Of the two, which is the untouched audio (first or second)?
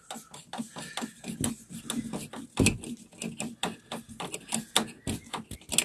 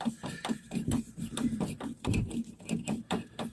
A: first